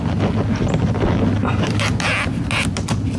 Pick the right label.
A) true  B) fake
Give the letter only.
A